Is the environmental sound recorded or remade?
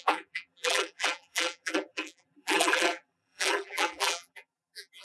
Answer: remade